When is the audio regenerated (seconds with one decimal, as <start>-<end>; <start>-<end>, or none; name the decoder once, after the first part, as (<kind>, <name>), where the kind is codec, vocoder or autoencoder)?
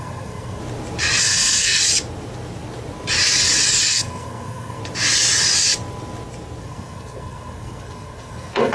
0.0-0.6 (codec, SNAC); 1.2-1.8; 3.9-4.8; 6.6-8.7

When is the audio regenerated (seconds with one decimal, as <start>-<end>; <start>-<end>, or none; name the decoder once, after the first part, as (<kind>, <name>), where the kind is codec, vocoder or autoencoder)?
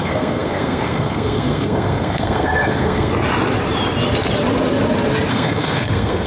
0.0-3.1 (codec, SNAC); 5.3-6.3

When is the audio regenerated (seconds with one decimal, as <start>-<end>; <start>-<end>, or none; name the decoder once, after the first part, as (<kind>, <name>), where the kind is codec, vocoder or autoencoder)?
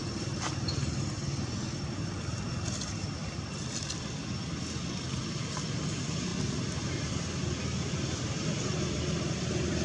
6.3-9.8 (vocoder, BigVGAN v2)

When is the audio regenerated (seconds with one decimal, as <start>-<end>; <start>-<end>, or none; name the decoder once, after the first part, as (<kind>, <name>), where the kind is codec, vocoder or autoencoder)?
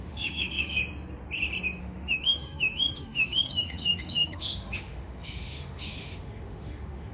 0.0-0.8 (autoencoder, DAC-VAE); 1.8-7.1